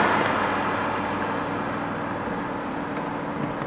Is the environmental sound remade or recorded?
recorded